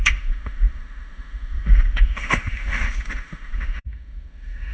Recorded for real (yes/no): no